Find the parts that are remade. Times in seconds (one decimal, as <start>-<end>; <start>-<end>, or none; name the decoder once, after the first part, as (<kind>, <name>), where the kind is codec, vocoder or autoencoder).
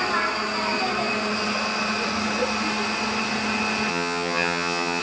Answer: 3.9-5.0 (vocoder, HiFi-GAN)